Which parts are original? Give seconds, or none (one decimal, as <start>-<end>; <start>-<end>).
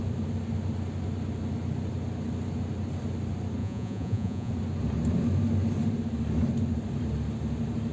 0.0-3.6; 4.5-7.9